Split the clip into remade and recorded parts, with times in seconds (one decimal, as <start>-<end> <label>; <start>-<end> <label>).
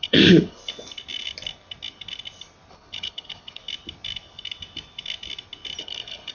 0.0-0.6 remade; 0.6-2.7 recorded; 2.7-3.6 remade; 3.6-5.8 recorded; 5.8-6.3 remade